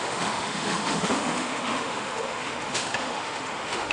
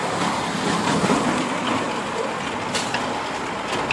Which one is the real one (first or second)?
second